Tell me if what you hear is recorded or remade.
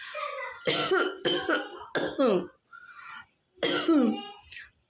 recorded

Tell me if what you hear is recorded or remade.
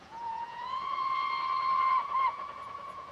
remade